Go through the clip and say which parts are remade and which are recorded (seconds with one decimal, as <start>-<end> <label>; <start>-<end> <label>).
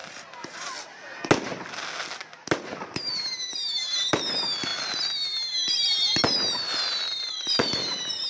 0.0-8.3 recorded